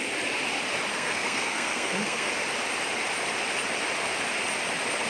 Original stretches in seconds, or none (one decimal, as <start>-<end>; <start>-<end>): 0.0-0.9; 2.3-5.1